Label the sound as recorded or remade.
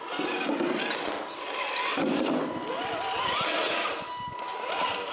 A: recorded